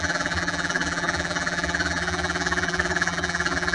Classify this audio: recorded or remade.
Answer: remade